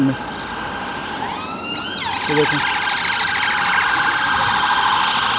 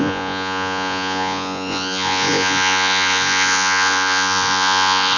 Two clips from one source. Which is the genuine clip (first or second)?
first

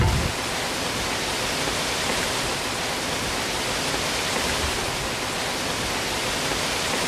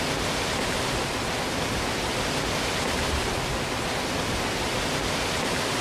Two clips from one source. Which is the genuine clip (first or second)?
second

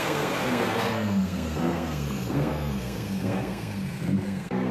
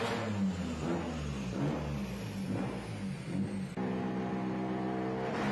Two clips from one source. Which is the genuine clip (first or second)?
second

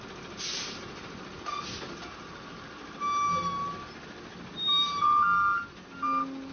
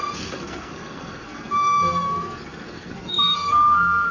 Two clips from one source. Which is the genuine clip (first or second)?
first